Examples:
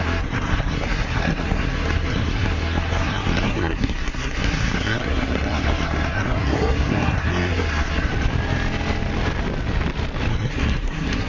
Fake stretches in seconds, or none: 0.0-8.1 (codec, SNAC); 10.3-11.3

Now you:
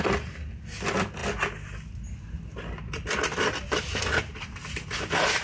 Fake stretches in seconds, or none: none

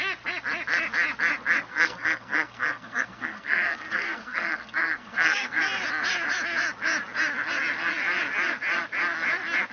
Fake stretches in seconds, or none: 1.7-5.6 (codec, SNAC)